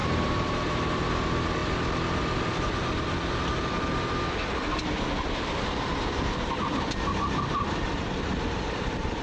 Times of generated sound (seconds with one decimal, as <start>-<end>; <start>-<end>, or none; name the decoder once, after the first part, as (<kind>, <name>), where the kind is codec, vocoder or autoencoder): 0.0-0.5 (vocoder, BigVGAN v2); 5.9-9.2